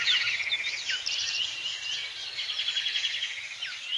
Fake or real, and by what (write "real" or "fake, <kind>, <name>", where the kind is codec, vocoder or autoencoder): real